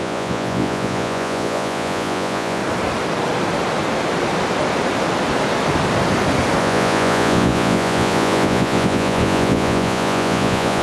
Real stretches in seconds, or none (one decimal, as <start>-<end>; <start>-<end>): 2.6-6.6